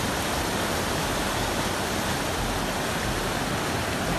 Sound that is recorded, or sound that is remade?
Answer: recorded